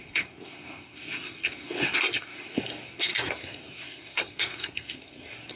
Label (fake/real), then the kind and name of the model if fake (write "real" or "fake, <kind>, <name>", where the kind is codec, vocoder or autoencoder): fake, codec, SNAC